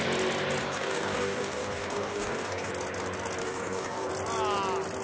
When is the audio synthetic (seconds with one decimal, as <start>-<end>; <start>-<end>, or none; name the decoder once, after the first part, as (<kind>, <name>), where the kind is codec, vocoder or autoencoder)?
0.6-2.7 (codec, DAC); 3.4-4.1